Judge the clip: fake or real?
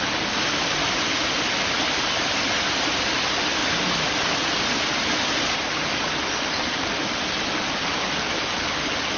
real